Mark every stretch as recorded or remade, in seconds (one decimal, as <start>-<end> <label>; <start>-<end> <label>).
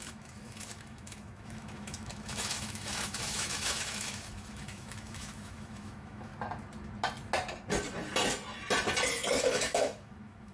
0.0-6.3 remade; 6.3-9.4 recorded; 9.4-10.5 remade